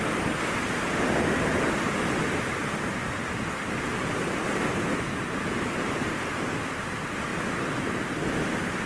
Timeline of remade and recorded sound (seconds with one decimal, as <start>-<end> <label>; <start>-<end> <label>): 0.0-3.0 recorded; 3.0-4.8 remade; 4.8-8.9 recorded